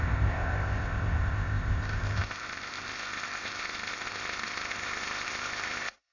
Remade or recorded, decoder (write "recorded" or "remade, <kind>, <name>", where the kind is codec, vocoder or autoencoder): remade, codec, ZipCodec